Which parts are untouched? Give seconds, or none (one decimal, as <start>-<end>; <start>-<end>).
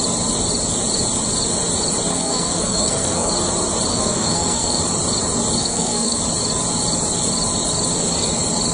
0.0-2.1; 3.3-3.9; 4.8-5.6; 6.2-8.7